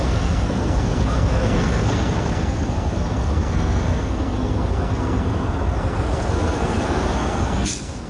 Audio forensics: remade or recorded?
remade